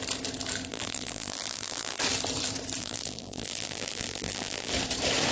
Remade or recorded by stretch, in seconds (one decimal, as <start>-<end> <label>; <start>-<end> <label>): 0.0-0.7 recorded; 0.7-2.0 remade; 2.0-2.8 recorded; 2.8-4.7 remade; 4.7-5.3 recorded